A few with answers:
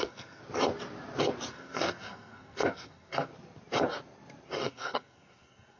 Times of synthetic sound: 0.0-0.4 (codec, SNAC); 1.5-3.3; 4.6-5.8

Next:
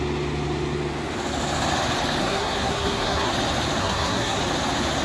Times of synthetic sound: 2.2-3.3 (codec, SNAC); 3.8-4.4